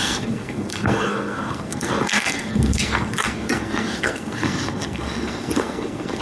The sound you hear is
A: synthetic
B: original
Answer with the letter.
A